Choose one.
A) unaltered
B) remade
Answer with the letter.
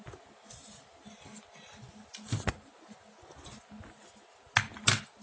A